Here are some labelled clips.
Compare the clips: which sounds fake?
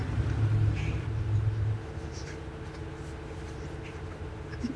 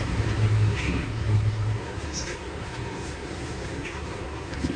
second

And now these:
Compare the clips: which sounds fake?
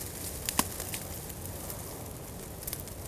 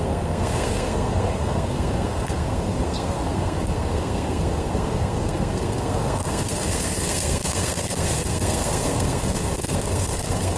second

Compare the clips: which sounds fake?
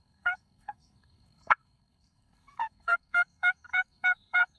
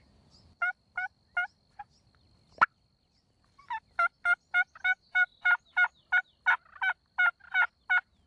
first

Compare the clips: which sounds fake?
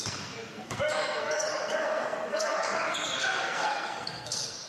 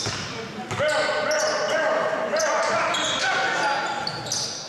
first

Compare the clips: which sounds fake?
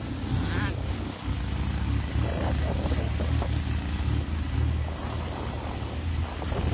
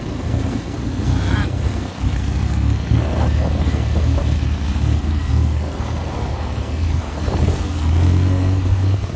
second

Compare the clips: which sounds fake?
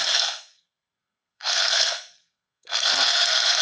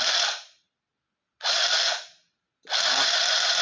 first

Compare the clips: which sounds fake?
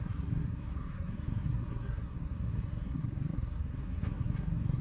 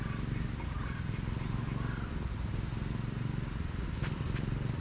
first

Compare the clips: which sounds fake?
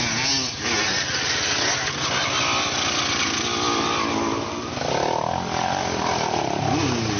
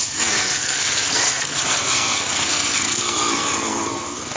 second